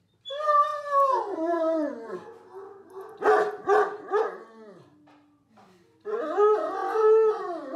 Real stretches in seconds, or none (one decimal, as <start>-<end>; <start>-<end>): 0.0-7.8